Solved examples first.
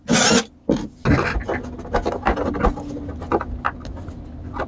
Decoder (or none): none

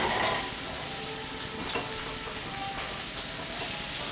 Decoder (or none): none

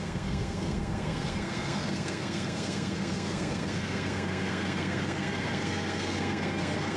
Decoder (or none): codec, SNAC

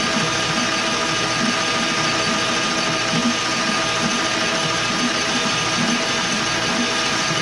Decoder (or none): none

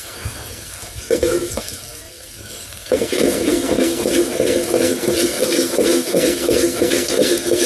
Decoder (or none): codec, SNAC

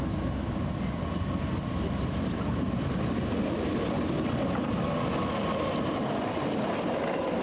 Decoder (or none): none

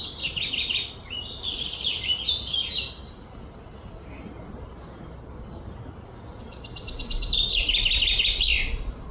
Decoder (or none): none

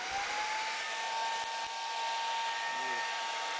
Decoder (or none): none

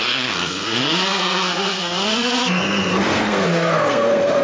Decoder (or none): codec, SNAC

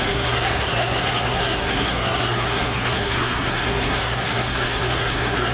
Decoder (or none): codec, SNAC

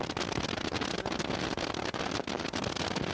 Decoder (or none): none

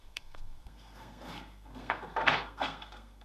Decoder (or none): codec, SNAC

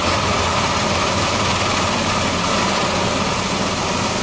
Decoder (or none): none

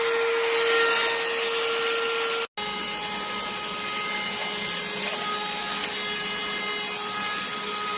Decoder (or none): none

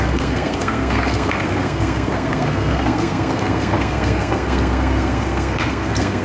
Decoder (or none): codec, SNAC